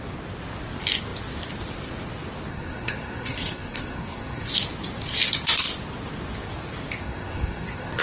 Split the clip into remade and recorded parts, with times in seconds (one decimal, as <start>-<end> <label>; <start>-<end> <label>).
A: 0.0-2.5 recorded; 2.5-4.5 remade; 4.5-7.0 recorded; 7.0-8.0 remade